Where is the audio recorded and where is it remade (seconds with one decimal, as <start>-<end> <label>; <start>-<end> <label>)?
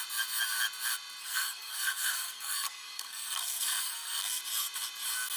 0.0-1.2 recorded; 1.2-4.4 remade; 4.4-5.4 recorded